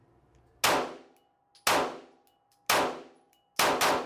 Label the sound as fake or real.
real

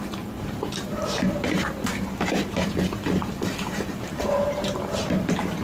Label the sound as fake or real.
fake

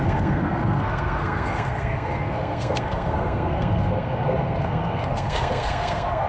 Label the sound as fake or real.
fake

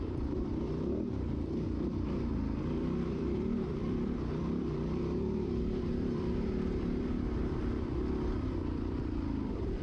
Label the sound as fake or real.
fake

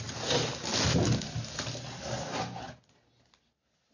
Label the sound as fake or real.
real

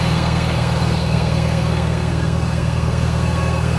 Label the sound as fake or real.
fake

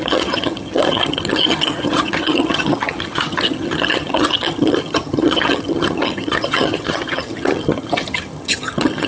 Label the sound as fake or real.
fake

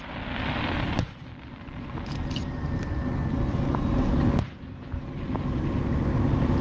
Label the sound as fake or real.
real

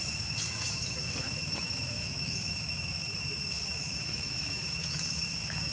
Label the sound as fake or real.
fake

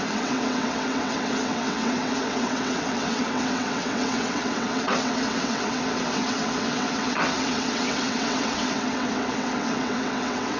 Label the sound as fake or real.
fake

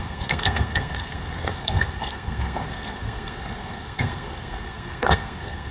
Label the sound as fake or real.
fake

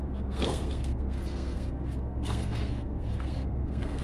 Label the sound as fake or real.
fake